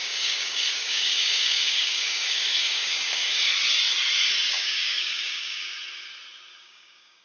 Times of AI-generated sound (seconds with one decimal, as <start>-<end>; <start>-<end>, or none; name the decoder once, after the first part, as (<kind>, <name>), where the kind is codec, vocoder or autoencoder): 0.0-3.2 (codec, DAC); 4.5-5.7; 6.6-7.2